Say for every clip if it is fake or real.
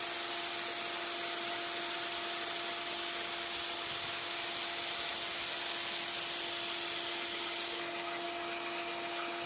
real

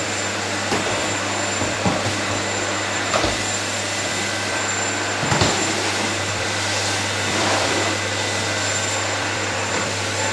fake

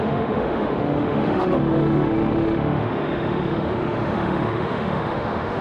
fake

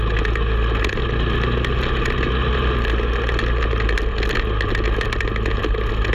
real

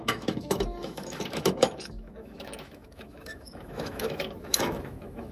fake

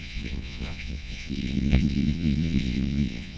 fake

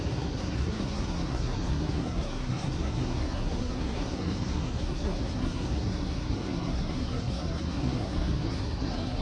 fake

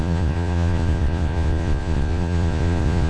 fake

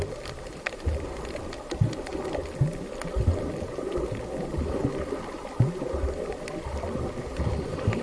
real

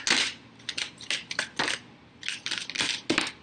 real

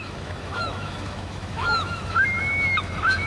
fake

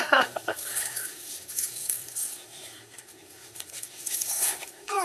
fake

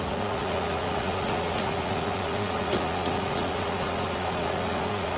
fake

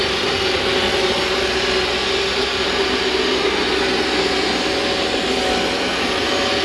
real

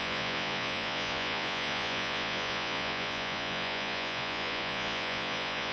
fake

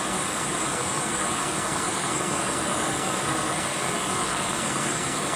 fake